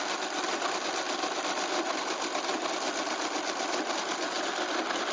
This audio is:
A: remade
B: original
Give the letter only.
B